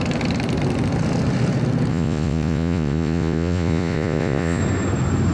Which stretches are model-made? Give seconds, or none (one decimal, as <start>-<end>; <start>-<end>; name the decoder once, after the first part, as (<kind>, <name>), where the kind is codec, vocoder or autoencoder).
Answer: 1.9-4.6 (vocoder, Vocos)